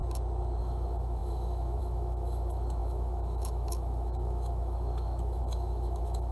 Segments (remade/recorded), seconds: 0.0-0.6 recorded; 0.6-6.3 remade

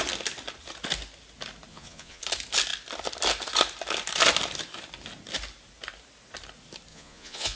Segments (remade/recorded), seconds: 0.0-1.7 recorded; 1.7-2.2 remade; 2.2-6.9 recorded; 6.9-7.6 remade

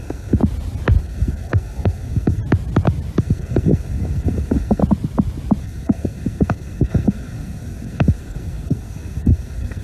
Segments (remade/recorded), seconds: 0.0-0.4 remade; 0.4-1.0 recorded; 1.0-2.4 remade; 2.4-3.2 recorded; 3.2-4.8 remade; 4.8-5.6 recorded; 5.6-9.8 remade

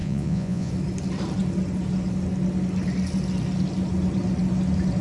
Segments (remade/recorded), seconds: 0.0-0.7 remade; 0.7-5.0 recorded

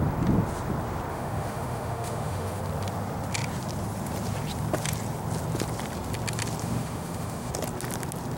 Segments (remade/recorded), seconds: 0.0-1.1 recorded; 1.1-2.6 remade; 2.6-6.6 recorded; 6.6-7.5 remade; 7.5-8.4 recorded

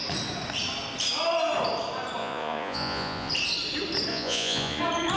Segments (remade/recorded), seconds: 0.0-2.2 recorded; 2.2-3.3 remade; 3.3-4.1 recorded; 4.1-4.8 remade; 4.8-5.2 recorded